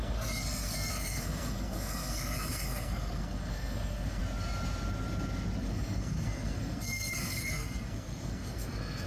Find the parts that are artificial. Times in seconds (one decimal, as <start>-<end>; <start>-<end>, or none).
0.0-4.2; 5.6-9.1